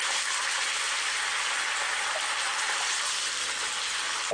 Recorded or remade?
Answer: recorded